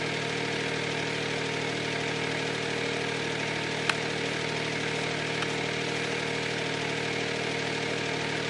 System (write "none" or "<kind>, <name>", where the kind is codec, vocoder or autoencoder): none